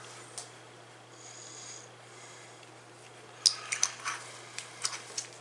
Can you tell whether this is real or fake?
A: real